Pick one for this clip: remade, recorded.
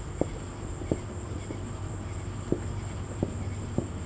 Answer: recorded